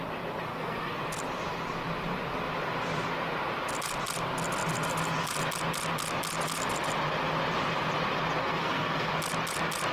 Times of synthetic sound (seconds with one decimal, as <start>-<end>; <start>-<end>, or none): 0.5-1.0; 8.4-9.1